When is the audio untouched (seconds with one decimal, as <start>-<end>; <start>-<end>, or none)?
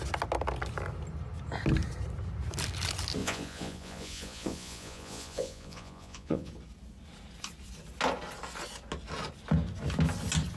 0.0-3.2; 6.5-10.6